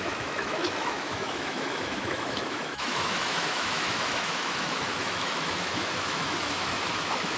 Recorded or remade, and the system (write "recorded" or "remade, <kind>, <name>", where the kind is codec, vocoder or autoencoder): remade, autoencoder, DAC-VAE